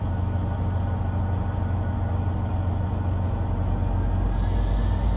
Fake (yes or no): no